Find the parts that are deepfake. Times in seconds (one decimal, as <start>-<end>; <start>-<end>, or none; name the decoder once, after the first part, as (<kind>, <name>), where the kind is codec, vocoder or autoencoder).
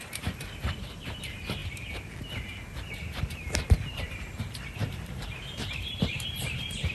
0.0-1.6 (vocoder, BigVGAN v2); 3.0-6.9